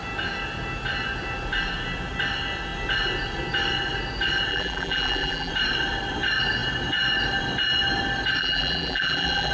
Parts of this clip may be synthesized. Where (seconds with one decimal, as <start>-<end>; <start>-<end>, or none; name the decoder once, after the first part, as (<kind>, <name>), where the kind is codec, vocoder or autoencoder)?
4.5-5.5 (vocoder, BigVGAN v2); 8.4-9.5